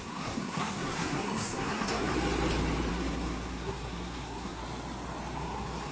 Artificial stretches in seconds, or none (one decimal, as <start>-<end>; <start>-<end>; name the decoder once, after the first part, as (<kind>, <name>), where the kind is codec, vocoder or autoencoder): 0.0-2.1 (codec, SNAC); 2.9-4.6; 5.4-5.9